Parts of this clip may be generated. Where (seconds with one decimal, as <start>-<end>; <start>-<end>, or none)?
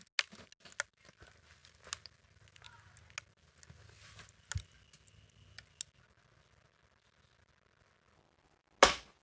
none